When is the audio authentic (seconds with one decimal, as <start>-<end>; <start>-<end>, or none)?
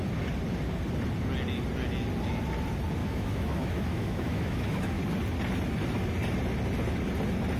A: 0.0-3.0; 5.0-7.6